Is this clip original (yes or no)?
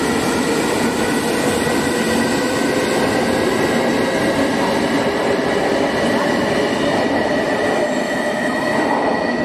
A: yes